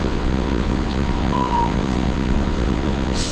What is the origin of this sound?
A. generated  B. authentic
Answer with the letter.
A